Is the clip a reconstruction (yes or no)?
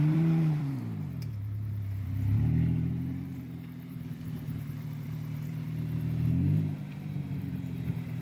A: yes